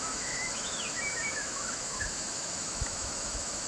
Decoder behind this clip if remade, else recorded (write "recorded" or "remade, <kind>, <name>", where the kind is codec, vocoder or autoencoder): remade, autoencoder, DAC-VAE